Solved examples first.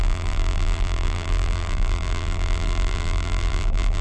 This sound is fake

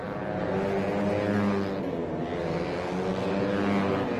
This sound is real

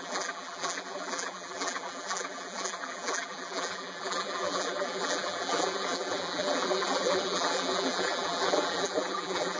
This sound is fake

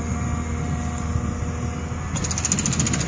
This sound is real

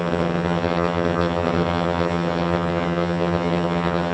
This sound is fake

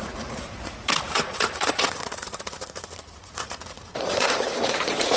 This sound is fake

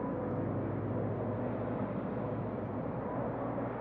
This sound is real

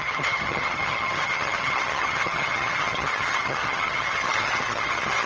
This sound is fake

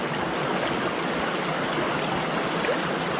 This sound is real